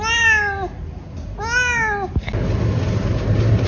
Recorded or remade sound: recorded